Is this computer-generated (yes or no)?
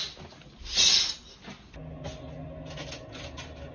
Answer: no